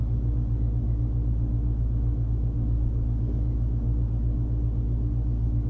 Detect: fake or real real